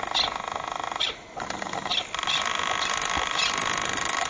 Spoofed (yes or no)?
no